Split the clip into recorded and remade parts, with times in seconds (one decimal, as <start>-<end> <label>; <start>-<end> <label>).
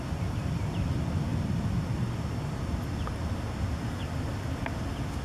0.0-1.3 recorded; 1.3-2.6 remade; 2.6-5.2 recorded